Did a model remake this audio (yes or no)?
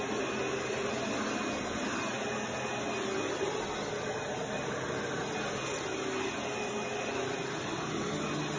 no